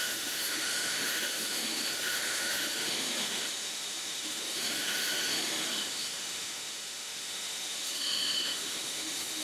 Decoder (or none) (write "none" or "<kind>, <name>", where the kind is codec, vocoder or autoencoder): autoencoder, DAC-VAE